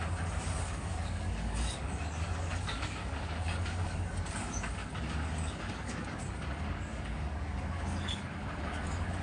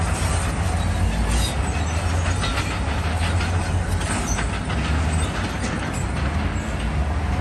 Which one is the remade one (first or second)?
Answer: first